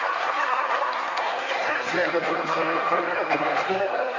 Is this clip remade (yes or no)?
yes